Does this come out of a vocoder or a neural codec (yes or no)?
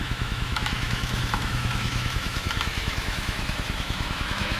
yes